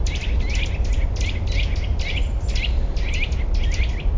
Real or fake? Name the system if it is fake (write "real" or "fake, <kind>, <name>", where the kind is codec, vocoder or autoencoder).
real